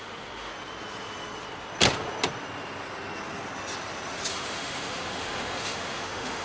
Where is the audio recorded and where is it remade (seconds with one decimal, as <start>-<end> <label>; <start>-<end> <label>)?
0.0-0.5 remade; 0.5-4.3 recorded; 4.3-6.4 remade